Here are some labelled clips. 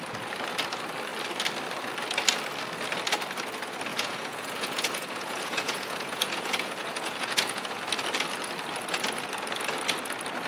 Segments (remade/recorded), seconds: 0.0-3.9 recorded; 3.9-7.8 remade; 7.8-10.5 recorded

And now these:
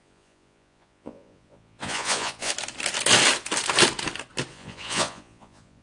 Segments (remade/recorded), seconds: 0.0-2.5 remade; 2.5-4.5 recorded; 4.5-5.8 remade

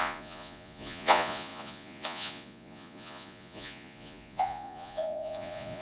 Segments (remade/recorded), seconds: 0.0-5.8 remade

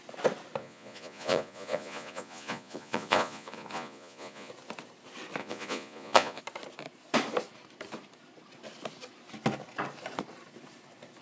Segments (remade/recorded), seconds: 0.0-0.6 recorded; 0.6-4.5 remade; 4.5-5.4 recorded; 5.4-6.4 remade; 6.4-11.2 recorded

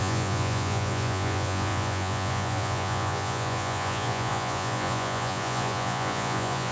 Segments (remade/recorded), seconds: 0.0-6.7 remade

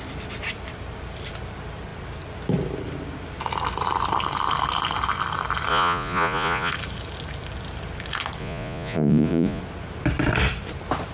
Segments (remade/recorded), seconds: 0.0-5.7 recorded; 5.7-6.7 remade; 6.7-8.4 recorded; 8.4-9.6 remade; 9.6-11.1 recorded

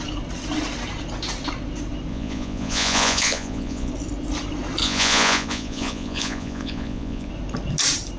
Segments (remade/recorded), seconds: 0.0-2.1 recorded; 2.1-3.9 remade; 3.9-4.8 recorded; 4.8-7.3 remade; 7.3-8.2 recorded